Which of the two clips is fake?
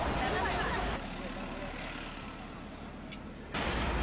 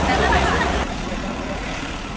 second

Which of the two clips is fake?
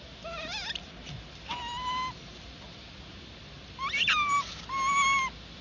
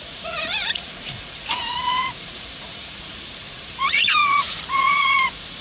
second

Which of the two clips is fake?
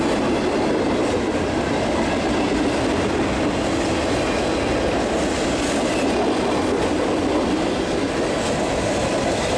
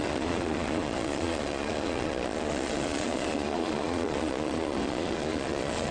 second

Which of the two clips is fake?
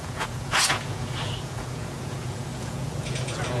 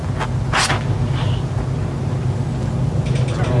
first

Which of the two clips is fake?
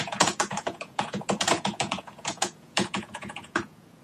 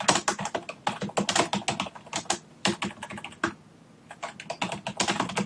first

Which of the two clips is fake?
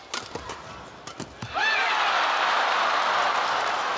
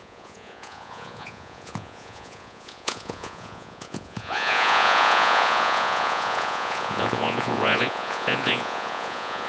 second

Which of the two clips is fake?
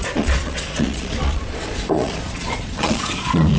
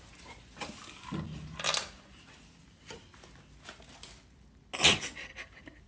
first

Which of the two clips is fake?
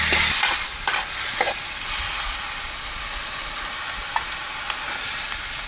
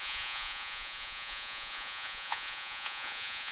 second